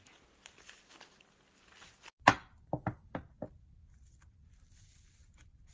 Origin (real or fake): real